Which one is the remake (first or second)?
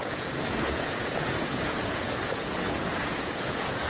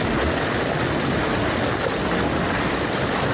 first